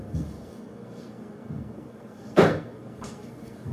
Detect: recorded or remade remade